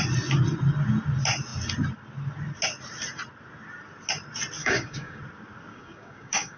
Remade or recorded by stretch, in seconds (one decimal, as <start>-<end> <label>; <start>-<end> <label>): 0.0-4.6 recorded; 4.6-5.2 remade; 5.2-5.7 recorded; 5.7-6.6 remade